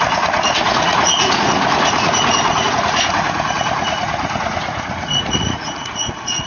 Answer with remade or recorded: remade